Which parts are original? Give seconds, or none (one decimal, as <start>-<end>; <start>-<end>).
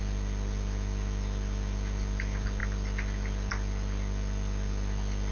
0.0-5.3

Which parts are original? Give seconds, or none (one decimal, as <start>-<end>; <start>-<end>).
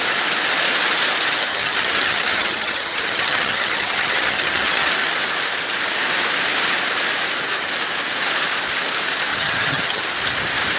0.0-1.5; 4.9-9.3; 10.0-10.8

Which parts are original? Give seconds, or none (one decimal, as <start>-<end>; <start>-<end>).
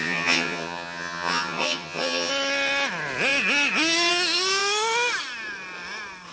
2.3-6.3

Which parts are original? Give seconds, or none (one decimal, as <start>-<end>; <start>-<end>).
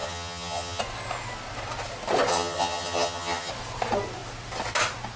0.8-2.3; 3.5-5.2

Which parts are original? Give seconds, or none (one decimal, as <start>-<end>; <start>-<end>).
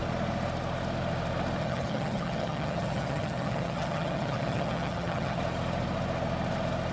0.0-1.6; 5.4-6.9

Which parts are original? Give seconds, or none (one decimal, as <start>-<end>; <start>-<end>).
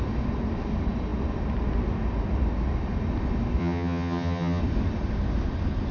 0.0-3.6; 4.6-5.9